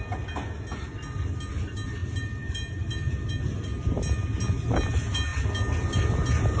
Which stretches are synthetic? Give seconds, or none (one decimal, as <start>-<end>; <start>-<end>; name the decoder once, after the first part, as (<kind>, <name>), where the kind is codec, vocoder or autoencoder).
2.0-3.3 (vocoder, BigVGAN v2)